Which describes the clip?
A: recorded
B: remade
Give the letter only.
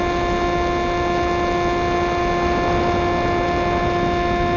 A